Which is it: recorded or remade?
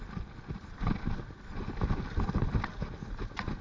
recorded